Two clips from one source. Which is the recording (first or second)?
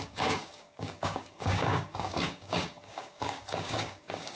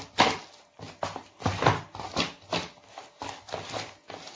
second